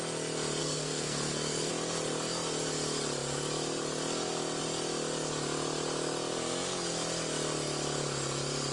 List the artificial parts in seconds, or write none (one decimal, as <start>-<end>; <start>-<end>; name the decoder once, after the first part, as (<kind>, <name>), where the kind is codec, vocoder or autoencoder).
0.6-1.7 (codec, SNAC)